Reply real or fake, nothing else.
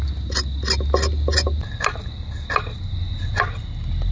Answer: real